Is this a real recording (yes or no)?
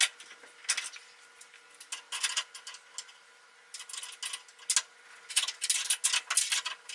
yes